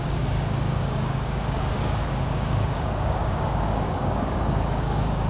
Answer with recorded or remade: remade